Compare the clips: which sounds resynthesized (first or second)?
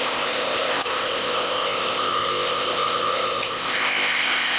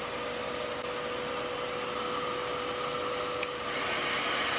first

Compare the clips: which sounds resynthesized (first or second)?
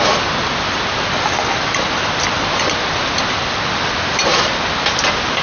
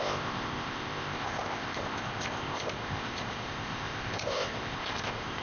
second